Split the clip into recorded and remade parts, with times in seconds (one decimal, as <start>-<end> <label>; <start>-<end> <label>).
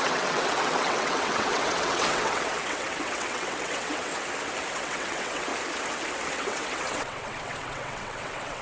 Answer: 0.0-4.1 remade; 4.1-4.7 recorded; 4.7-5.5 remade; 5.5-6.3 recorded; 6.3-8.6 remade